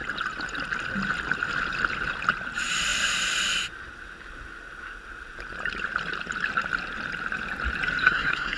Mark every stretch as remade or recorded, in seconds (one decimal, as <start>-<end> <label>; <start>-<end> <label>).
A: 0.0-8.0 recorded; 8.0-8.6 remade